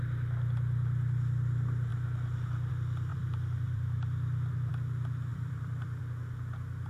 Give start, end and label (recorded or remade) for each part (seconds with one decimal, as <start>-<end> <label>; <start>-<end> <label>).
0.0-3.1 recorded; 3.1-4.7 remade; 4.7-5.3 recorded; 5.3-6.0 remade; 6.0-6.9 recorded